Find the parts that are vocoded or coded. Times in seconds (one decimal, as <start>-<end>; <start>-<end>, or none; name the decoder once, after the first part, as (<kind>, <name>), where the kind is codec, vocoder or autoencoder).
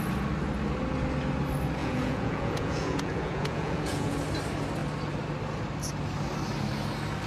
1.8-4.2 (vocoder, Vocos)